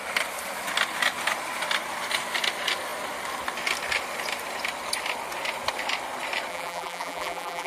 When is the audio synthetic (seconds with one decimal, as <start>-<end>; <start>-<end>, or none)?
6.5-7.7